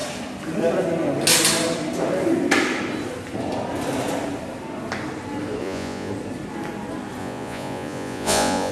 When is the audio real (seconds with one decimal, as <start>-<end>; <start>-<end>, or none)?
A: 0.0-5.6; 6.1-7.2